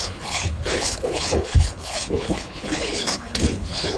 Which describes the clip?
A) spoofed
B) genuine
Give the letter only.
A